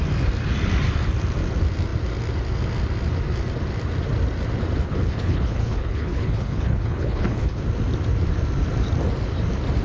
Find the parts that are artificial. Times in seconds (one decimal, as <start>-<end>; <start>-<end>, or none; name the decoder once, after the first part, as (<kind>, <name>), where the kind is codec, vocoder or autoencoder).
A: 4.8-7.6 (codec, HILCodec)